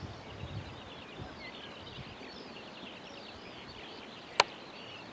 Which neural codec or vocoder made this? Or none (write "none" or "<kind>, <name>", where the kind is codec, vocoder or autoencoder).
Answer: none